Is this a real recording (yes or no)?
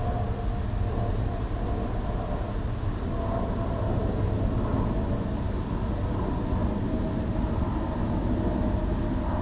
yes